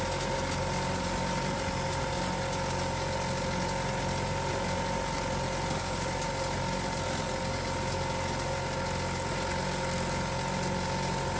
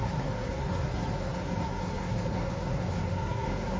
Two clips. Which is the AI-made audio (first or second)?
second